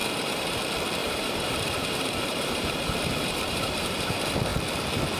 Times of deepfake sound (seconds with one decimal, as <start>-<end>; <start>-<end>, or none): 0.0-0.6; 1.0-4.1